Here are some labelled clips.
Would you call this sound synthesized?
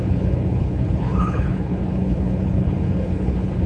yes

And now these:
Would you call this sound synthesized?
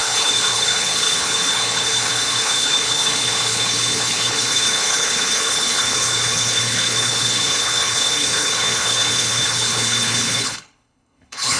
yes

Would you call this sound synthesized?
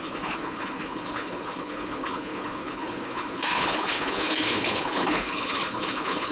yes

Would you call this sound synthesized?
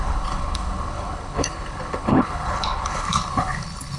yes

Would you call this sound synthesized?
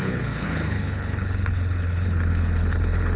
yes